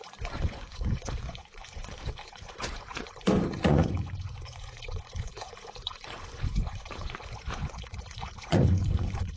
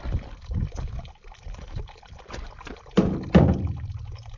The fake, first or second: first